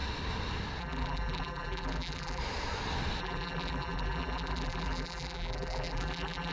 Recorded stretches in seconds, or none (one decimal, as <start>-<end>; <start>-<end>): 0.0-0.8; 2.4-3.2